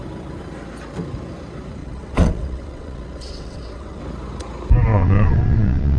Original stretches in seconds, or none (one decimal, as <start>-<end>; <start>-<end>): 0.0-1.8; 4.0-4.9